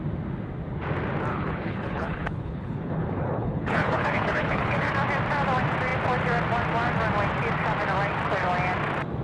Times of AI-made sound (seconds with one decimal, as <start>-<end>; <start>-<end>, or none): 1.3-4.9